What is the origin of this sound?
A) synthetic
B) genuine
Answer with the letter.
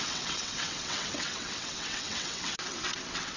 A